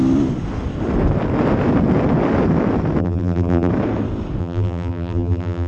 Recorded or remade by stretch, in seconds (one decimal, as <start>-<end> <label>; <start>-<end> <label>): 0.0-3.0 recorded; 3.0-3.7 remade; 3.7-4.4 recorded; 4.4-5.7 remade